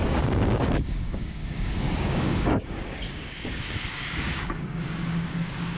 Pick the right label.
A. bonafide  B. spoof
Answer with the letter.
B